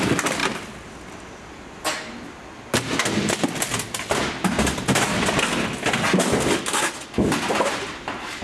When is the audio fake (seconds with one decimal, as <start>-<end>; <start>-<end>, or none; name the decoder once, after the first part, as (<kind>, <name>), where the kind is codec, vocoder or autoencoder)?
none